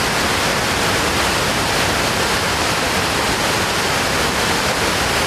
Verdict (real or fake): real